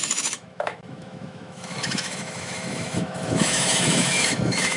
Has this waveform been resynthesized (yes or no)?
yes